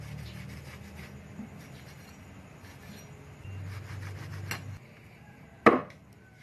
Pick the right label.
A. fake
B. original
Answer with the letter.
B